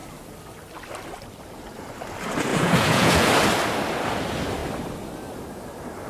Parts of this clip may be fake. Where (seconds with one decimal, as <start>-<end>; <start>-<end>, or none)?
2.5-3.3

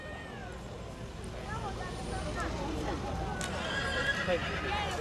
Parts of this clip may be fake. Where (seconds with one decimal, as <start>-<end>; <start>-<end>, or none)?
none

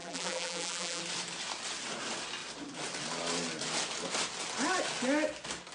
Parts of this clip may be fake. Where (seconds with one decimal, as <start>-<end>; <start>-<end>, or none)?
0.0-1.0

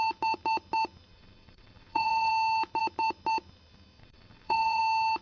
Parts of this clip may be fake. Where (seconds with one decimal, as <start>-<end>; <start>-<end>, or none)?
1.1-2.3; 4.0-4.8

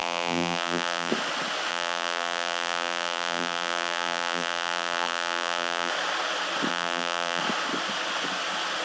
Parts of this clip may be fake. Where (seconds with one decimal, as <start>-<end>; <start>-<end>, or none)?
0.0-1.1; 1.7-5.9; 6.7-7.4